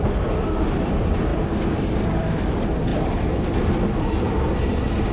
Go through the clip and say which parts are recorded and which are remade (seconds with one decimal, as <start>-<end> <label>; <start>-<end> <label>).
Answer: 0.0-5.1 remade